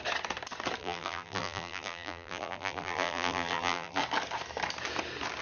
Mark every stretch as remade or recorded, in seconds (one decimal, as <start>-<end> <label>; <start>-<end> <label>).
0.0-0.8 recorded; 0.8-4.0 remade; 4.0-5.4 recorded